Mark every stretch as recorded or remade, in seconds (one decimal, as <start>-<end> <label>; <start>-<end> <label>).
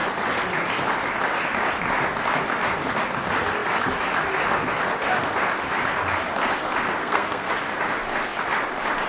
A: 0.0-7.0 recorded; 7.0-7.5 remade; 7.5-9.1 recorded